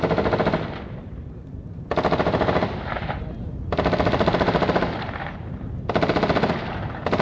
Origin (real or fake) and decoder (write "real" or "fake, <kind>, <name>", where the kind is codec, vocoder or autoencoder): real